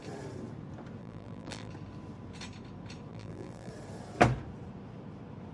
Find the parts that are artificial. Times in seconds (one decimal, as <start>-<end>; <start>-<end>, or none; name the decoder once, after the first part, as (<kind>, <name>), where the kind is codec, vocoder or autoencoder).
1.0-1.7 (vocoder, BigVGAN v2); 3.1-3.7